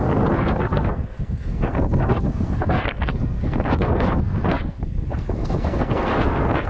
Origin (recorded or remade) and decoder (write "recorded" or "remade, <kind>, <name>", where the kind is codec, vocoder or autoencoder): remade, codec, SNAC